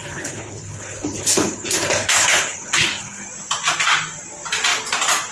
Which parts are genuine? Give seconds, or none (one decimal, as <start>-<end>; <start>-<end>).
3.2-5.3